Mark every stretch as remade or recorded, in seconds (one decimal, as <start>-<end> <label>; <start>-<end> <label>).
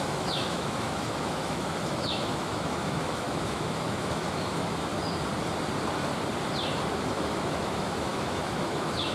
0.0-4.9 remade; 4.9-7.1 recorded; 7.1-9.1 remade